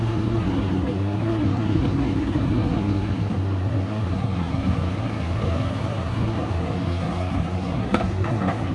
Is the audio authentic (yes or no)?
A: no